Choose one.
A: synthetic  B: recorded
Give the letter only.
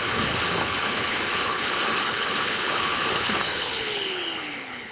A